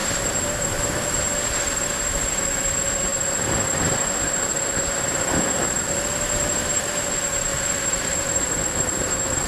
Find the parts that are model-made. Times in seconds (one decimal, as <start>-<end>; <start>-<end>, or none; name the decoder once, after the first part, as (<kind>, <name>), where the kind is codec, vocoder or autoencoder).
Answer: 0.0-1.2 (vocoder, BigVGAN v2); 6.6-7.1; 7.5-9.5

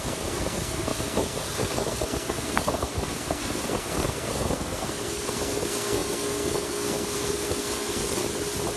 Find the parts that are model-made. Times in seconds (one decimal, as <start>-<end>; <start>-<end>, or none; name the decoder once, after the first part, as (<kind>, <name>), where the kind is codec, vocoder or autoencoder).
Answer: 0.0-8.2 (codec, SNAC)

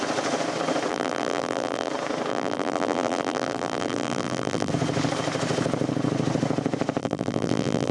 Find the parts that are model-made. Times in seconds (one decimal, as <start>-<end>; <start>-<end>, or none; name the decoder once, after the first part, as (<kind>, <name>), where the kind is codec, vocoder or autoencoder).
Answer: 0.9-1.9 (vocoder, BigVGAN v2); 2.3-4.7; 7.0-7.9

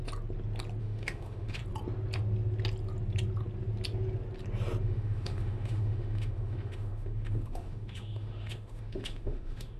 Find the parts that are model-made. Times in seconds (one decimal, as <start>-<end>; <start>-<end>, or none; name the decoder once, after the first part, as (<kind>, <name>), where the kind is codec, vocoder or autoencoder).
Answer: 0.8-1.6 (autoencoder, DAC-VAE); 4.8-9.8

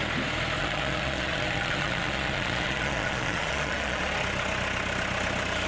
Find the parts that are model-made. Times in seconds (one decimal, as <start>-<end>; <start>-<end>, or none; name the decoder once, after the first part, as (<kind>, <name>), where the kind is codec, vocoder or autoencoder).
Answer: 0.6-4.0 (vocoder, Vocos)